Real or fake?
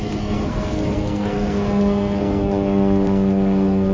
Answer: fake